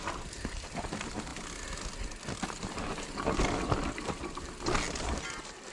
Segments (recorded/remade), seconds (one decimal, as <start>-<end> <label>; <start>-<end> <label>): 0.0-5.7 recorded